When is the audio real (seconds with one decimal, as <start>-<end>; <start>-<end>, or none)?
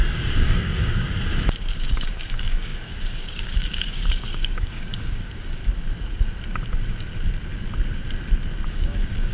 1.1-1.7; 5.6-8.7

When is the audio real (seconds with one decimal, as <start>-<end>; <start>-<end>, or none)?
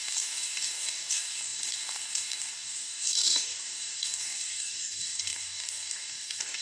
none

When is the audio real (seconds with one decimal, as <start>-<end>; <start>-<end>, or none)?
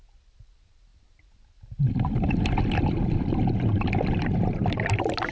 0.0-5.3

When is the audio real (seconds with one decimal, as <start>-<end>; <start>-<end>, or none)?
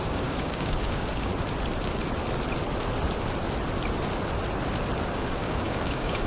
1.3-5.1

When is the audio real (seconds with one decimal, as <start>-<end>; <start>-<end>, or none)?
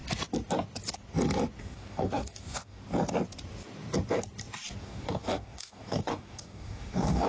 0.0-1.6; 2.8-4.8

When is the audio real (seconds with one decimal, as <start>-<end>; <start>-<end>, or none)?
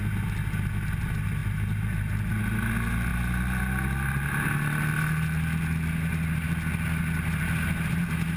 0.0-8.4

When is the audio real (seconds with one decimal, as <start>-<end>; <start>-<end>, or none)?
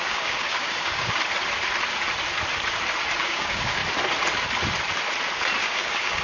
1.2-3.2; 3.8-5.6